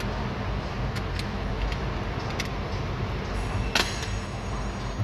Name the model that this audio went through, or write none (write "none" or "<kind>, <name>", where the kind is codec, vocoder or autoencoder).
none